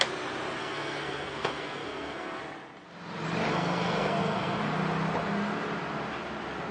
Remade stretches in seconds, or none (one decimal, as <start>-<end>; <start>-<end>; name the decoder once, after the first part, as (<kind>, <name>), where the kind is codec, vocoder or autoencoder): 0.6-2.4 (codec, SNAC); 3.5-4.6